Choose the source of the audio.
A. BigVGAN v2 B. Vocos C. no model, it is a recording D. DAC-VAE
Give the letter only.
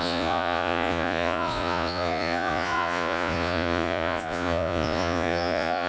B